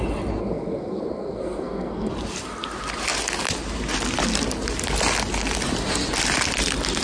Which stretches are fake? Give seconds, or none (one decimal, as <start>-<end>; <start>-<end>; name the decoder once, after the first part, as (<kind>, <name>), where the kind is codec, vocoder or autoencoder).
0.4-2.1 (codec, SNAC)